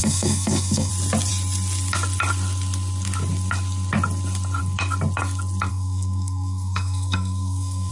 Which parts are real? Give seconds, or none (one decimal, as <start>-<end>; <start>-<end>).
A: 0.9-5.7